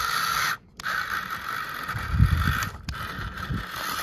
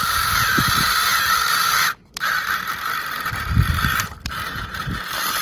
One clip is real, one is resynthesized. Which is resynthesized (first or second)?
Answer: second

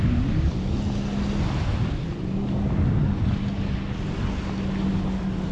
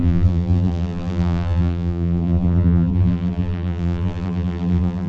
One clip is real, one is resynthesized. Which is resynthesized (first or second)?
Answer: second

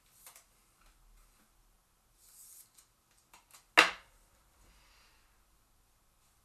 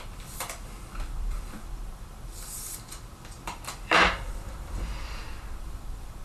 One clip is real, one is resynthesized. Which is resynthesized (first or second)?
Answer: second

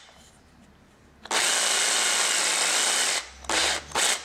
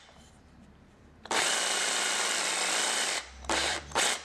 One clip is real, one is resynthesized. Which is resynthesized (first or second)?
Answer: second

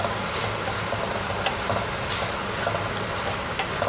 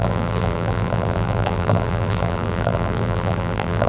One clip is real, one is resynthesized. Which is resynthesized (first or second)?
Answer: second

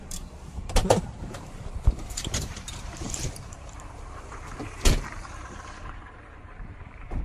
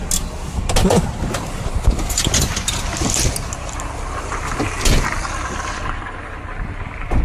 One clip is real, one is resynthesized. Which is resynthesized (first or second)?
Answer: first